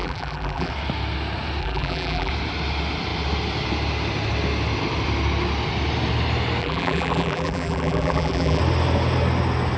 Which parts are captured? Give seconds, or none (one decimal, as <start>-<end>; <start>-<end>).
0.7-1.6; 2.3-6.6; 8.6-9.8